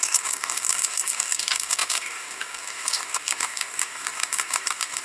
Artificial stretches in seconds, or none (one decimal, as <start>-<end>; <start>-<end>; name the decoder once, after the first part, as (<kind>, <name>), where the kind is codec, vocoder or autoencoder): 0.0-5.0 (codec, DAC)